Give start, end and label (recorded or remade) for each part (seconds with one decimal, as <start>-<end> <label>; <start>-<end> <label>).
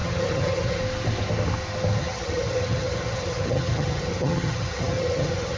0.0-0.8 remade; 0.8-2.0 recorded; 2.0-5.6 remade